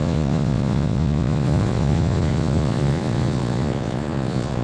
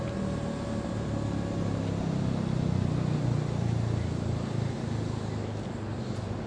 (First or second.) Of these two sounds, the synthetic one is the first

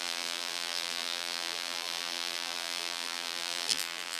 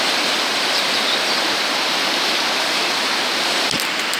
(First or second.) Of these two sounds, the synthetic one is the first